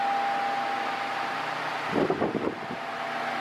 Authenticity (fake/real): real